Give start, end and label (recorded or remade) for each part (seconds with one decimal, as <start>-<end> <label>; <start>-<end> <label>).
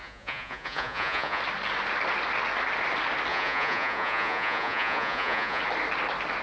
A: 0.0-1.4 remade; 1.4-3.3 recorded; 3.3-5.6 remade; 5.6-6.4 recorded